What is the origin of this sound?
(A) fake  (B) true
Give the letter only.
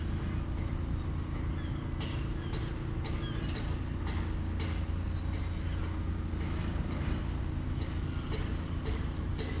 B